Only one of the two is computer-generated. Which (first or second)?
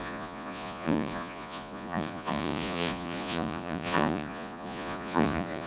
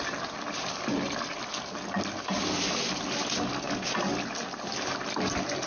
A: first